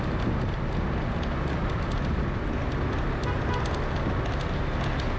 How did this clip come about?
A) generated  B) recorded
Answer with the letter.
B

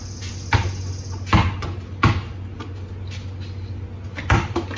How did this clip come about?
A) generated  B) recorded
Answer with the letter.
B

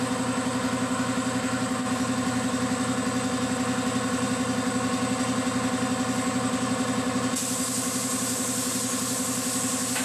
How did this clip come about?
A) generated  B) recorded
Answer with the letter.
B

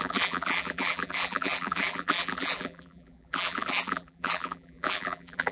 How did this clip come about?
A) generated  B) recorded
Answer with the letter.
A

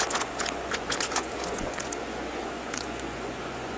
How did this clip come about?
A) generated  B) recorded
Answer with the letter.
A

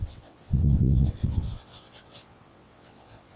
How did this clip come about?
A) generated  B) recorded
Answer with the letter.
A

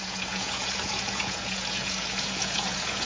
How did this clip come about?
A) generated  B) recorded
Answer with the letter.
A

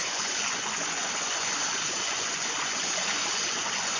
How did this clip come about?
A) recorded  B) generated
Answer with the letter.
B